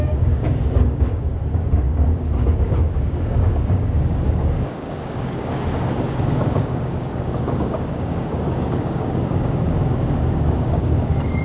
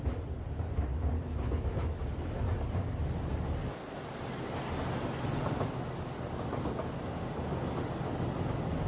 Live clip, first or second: second